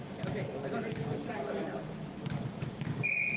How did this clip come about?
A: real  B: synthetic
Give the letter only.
A